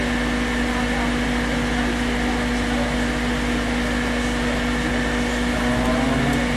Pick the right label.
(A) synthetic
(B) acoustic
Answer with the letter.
B